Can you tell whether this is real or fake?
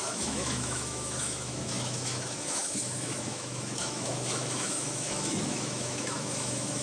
fake